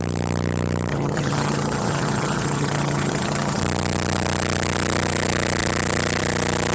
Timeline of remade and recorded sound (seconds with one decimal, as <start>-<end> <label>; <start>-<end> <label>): 0.0-0.9 recorded; 0.9-3.6 remade; 3.6-6.7 recorded